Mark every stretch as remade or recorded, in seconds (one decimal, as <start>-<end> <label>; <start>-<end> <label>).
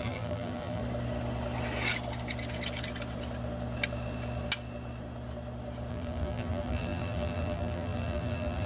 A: 0.0-0.8 remade; 0.8-5.9 recorded; 5.9-8.7 remade